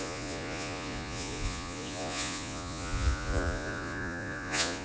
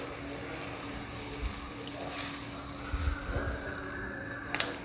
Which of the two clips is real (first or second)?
second